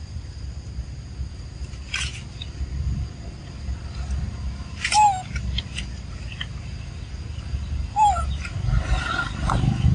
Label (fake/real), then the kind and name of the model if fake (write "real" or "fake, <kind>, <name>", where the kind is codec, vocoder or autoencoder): real